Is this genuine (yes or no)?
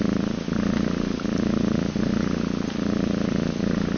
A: yes